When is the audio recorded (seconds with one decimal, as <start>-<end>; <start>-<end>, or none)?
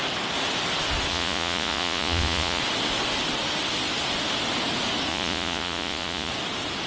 0.0-1.1; 2.6-5.1; 6.3-6.9